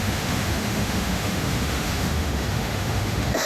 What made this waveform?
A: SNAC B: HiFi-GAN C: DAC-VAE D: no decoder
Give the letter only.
C